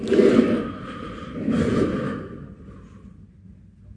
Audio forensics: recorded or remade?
recorded